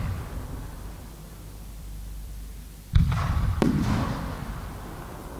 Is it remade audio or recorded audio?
remade